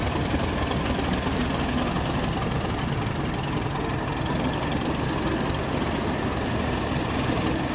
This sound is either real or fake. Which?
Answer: real